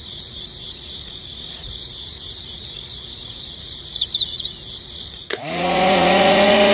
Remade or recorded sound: remade